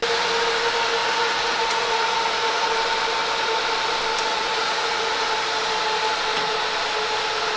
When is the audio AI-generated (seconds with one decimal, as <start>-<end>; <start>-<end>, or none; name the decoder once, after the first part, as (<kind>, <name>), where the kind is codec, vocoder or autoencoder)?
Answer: 1.0-2.7 (vocoder, Vocos); 4.3-5.3